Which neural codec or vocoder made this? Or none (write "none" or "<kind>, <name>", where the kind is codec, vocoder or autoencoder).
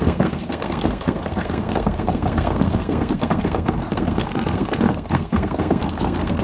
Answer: codec, SNAC